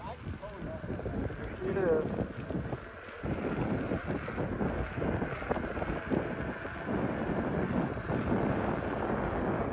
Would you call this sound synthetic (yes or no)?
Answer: no